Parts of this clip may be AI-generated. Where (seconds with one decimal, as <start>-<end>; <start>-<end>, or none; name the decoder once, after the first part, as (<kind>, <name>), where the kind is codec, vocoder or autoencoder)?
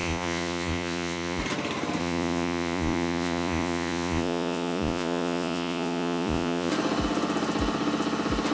0.0-1.4 (vocoder, Vocos); 2.0-6.7